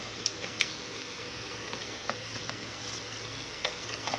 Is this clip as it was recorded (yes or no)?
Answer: no